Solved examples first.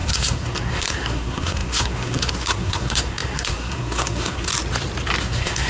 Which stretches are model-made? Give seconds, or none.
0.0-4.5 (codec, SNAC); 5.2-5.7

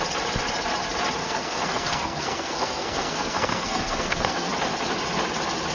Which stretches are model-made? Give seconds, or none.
1.2-4.5 (codec, SNAC)

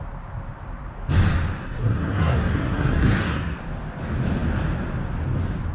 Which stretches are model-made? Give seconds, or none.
1.6-3.6 (codec, SNAC)

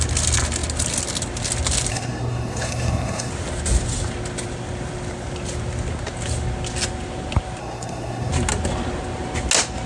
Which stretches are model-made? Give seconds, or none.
1.9-3.3 (codec, SNAC); 7.6-8.3